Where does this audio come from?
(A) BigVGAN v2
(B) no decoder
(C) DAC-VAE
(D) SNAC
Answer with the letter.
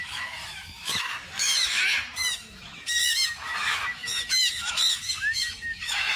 C